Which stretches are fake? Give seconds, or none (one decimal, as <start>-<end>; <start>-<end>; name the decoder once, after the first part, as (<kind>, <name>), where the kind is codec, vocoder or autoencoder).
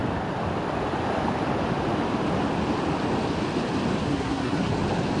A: 4.1-4.7 (codec, SNAC)